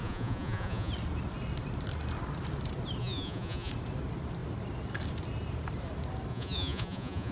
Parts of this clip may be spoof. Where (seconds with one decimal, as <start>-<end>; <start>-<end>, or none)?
0.0-0.9; 3.0-3.7; 6.3-7.3